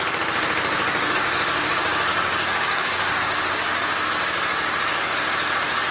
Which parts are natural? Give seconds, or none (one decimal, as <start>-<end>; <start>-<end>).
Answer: 0.0-0.8; 1.7-2.1; 3.5-5.9